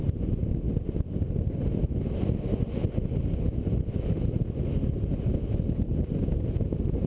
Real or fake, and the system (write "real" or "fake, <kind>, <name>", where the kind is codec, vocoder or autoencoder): real